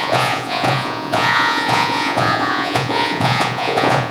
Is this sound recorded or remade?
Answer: remade